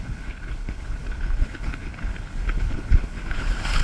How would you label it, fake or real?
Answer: fake